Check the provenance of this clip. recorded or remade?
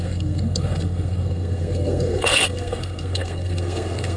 remade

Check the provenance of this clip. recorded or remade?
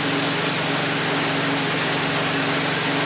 recorded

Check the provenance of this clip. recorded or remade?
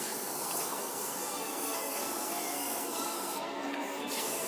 remade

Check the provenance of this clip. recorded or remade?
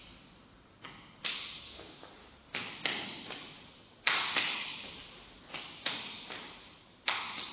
recorded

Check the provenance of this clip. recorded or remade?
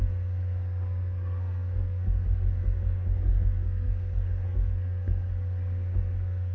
remade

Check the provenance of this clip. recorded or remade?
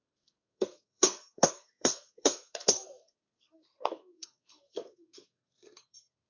remade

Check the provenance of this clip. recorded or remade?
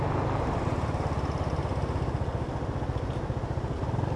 recorded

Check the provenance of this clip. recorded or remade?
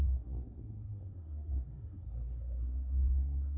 remade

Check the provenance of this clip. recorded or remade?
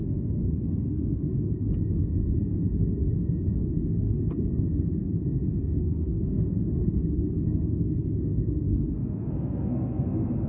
remade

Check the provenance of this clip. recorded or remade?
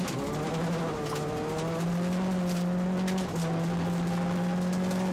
recorded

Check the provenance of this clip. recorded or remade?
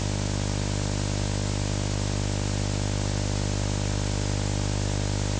recorded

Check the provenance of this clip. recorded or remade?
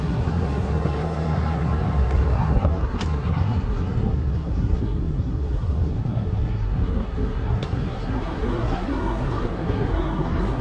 remade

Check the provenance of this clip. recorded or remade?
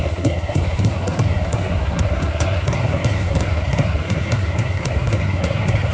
remade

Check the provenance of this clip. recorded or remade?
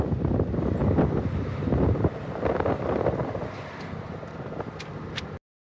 recorded